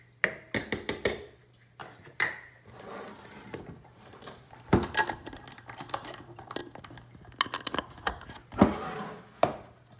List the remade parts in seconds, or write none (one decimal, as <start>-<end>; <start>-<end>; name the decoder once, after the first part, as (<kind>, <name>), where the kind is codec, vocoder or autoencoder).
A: 0.6-1.4 (vocoder, BigVGAN v2); 1.8-6.6